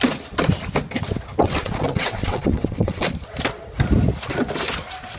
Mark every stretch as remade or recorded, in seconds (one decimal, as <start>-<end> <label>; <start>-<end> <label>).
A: 0.0-1.4 recorded; 1.4-3.0 remade; 3.0-5.2 recorded